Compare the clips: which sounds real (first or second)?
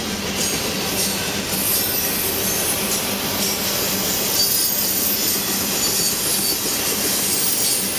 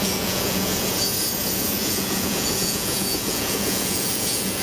first